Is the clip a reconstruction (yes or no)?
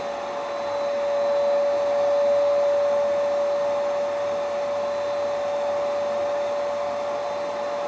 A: no